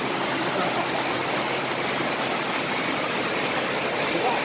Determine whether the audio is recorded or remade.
recorded